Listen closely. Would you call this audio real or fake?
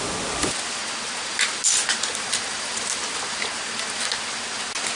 real